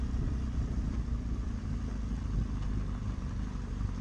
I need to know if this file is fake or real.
real